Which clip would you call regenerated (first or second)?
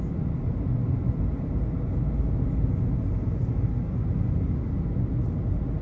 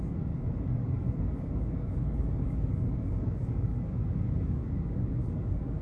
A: second